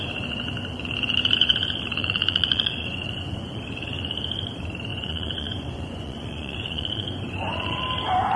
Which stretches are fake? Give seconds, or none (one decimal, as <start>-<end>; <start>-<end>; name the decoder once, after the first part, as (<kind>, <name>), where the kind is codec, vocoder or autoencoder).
2.0-3.6 (vocoder, Vocos); 4.9-7.8